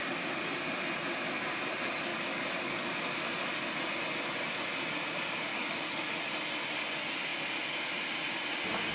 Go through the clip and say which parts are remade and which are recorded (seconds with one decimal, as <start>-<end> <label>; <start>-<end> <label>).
0.0-2.1 recorded; 2.1-2.9 remade; 2.9-5.5 recorded; 5.5-6.0 remade; 6.0-8.9 recorded